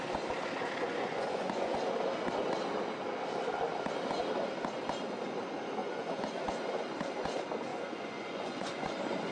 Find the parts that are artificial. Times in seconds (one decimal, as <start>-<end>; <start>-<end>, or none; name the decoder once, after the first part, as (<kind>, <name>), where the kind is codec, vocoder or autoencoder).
0.8-1.8 (vocoder, Vocos); 5.8-6.5; 7.7-8.9